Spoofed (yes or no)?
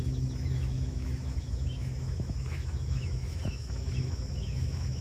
yes